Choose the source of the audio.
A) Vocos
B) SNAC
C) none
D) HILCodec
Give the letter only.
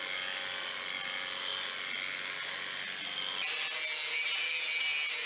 C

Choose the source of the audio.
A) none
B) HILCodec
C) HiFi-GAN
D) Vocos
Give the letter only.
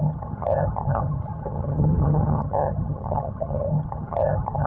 C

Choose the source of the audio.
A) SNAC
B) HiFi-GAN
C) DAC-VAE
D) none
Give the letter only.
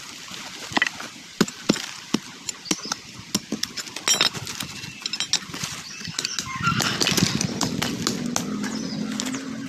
D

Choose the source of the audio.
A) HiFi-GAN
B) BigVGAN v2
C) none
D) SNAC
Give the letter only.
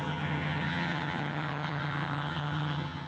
A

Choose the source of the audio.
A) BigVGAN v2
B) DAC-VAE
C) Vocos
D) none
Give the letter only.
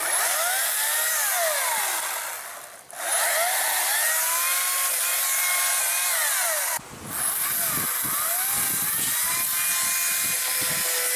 D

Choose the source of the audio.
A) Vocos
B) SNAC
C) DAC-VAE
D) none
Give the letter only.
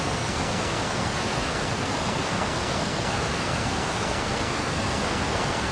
B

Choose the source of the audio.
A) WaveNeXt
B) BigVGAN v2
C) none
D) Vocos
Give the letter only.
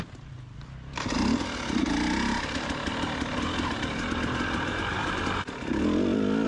C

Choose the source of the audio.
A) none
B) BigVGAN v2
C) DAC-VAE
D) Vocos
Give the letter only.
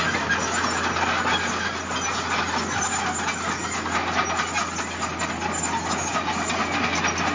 A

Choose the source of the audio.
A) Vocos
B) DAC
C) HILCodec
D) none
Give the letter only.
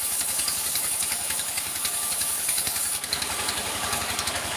B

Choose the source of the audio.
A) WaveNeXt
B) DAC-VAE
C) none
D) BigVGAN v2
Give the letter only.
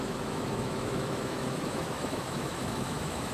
B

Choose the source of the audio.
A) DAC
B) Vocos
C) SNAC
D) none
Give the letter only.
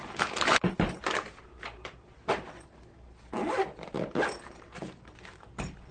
D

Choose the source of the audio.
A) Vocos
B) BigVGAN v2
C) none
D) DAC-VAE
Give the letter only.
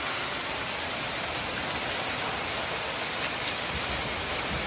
C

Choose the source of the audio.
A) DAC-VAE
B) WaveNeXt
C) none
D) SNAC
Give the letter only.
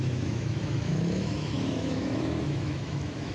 A